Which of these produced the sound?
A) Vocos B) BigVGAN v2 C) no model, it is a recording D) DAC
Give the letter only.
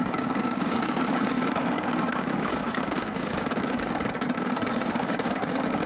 D